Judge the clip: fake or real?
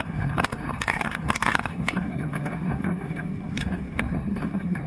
fake